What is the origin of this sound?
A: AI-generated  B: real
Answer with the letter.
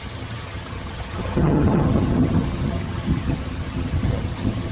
A